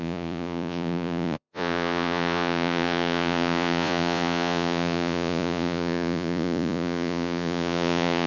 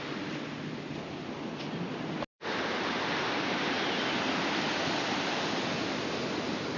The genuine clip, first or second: second